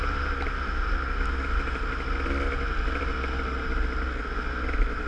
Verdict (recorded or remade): recorded